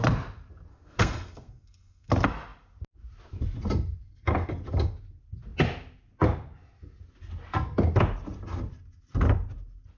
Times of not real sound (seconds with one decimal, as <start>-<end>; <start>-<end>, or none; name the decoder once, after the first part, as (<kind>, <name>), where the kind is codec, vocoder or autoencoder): 0.7-2.1 (codec, SNAC)